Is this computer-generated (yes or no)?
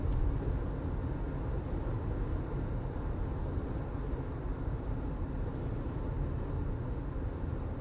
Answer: no